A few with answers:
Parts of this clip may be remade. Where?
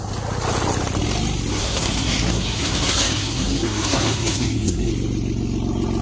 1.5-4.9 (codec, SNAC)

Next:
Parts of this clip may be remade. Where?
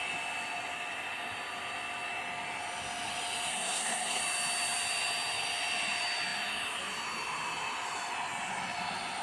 3.5-4.2 (codec, SNAC)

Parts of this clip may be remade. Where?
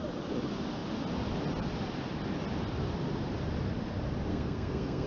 4.3-5.1 (codec, SNAC)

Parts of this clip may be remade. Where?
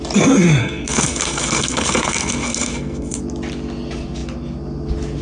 0.6-3.2 (codec, SNAC)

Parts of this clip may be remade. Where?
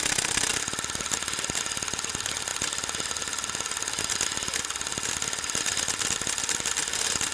none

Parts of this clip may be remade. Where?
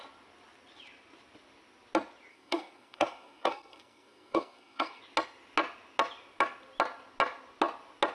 2.3-5.0 (codec, SNAC)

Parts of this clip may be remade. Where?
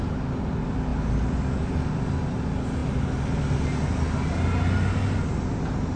none